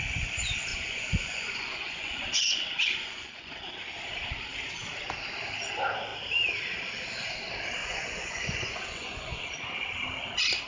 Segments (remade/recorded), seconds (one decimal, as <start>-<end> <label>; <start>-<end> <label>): 0.0-0.7 recorded; 0.7-3.6 remade; 3.6-7.8 recorded; 7.8-9.4 remade; 9.4-10.7 recorded